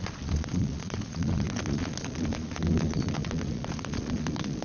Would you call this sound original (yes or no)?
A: no